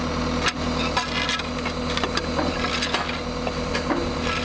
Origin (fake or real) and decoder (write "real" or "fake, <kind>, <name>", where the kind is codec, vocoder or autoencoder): real